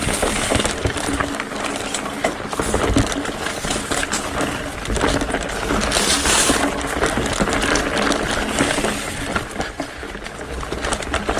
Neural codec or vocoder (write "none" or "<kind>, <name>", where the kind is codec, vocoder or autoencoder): none